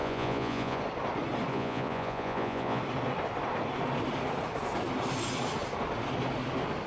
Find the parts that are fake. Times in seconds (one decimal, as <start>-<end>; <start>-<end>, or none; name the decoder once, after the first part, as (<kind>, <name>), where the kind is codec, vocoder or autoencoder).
0.0-0.8 (vocoder, Vocos); 1.5-2.8